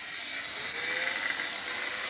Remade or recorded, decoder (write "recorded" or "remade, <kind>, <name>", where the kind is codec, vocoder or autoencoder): recorded